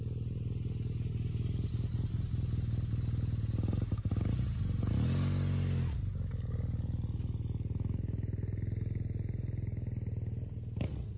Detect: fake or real real